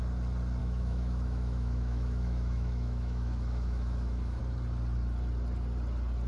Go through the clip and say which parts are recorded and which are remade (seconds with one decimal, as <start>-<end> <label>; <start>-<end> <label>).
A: 0.0-0.6 recorded; 0.6-4.4 remade; 4.4-6.3 recorded